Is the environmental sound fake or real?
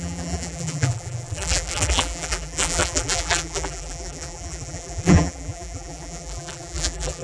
fake